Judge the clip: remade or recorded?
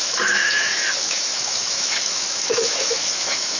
remade